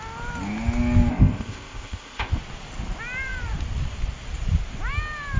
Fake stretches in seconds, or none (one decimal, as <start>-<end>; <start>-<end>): 1.1-2.3